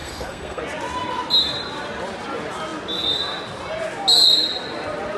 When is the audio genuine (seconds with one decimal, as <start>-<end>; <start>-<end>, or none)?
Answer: 0.6-5.2